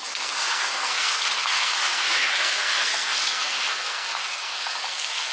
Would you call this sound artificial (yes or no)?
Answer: yes